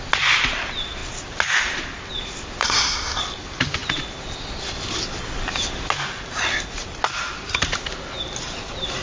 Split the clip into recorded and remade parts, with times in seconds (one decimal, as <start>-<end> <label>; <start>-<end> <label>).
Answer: 0.0-2.6 recorded; 2.6-3.2 remade; 3.2-9.0 recorded

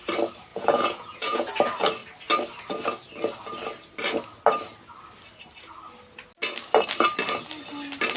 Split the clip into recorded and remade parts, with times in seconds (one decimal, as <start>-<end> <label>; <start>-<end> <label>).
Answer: 0.0-0.5 recorded; 0.5-1.5 remade; 1.5-8.2 recorded

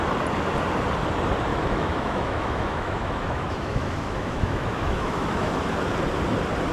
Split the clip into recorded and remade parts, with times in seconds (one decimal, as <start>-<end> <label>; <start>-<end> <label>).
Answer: 0.0-1.5 recorded; 1.5-5.5 remade; 5.5-6.7 recorded

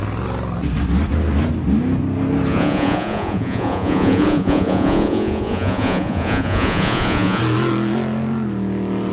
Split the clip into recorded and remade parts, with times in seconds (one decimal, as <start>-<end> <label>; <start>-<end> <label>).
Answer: 0.0-2.5 recorded; 2.5-7.4 remade; 7.4-9.1 recorded

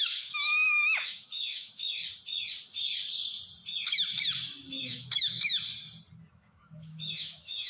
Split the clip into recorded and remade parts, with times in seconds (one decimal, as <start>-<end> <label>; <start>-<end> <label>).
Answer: 0.0-2.0 remade; 2.0-4.8 recorded; 4.8-5.5 remade; 5.5-6.3 recorded; 6.3-7.7 remade

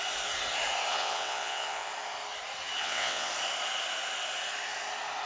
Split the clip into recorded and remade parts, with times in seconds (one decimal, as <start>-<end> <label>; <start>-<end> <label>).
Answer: 0.0-0.9 recorded; 0.9-1.9 remade; 1.9-2.8 recorded; 2.8-3.3 remade; 3.3-5.3 recorded